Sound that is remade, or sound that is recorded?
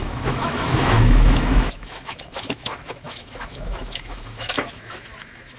remade